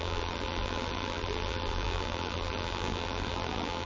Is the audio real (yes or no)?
no